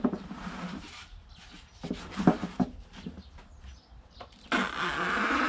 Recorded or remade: recorded